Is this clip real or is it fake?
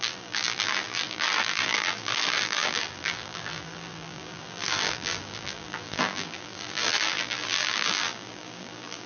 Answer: fake